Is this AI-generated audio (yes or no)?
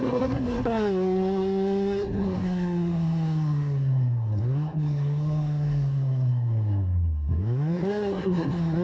yes